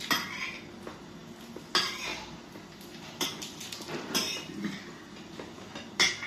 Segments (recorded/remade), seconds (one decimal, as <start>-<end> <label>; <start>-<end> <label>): 0.0-2.1 recorded; 2.1-5.3 remade; 5.3-6.3 recorded